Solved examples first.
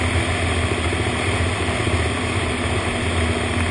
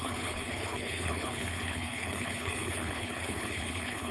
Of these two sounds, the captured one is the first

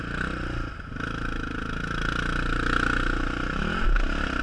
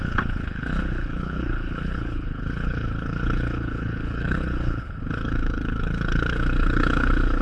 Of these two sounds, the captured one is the first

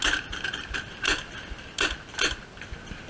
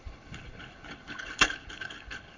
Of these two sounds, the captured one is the first